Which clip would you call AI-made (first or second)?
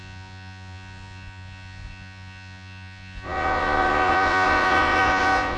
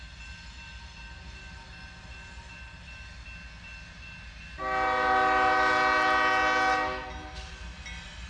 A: first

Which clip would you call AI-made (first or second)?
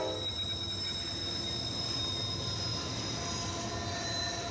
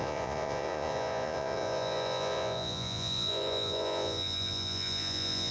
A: second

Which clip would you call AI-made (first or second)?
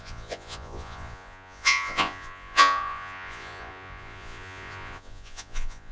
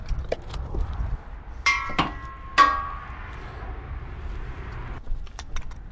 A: first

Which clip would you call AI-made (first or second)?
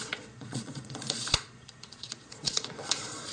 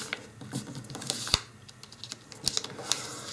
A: first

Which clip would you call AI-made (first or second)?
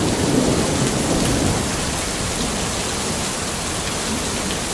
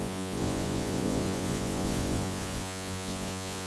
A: second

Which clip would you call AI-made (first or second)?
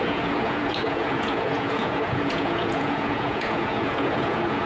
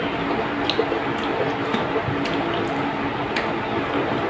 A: first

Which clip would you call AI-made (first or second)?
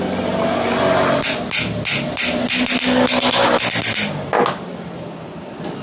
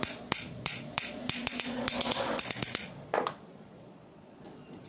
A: second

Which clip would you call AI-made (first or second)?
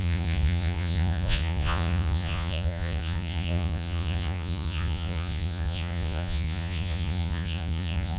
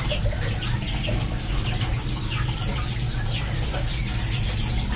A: first